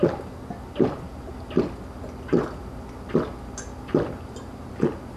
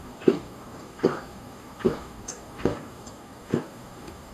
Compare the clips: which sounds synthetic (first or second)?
second